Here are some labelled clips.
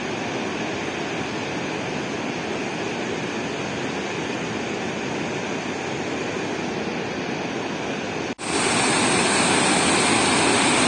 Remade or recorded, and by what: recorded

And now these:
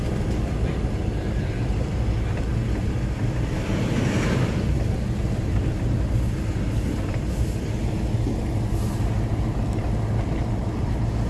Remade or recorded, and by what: recorded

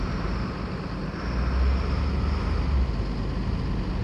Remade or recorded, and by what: recorded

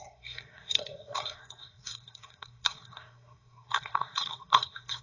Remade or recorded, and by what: remade, codec, SNAC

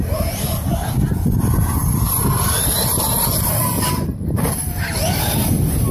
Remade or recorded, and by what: recorded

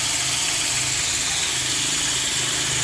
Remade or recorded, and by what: recorded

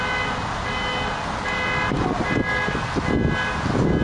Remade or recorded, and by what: recorded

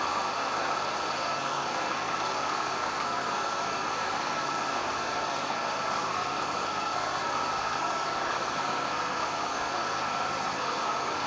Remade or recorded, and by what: remade, codec, SNAC